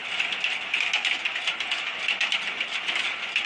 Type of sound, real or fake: real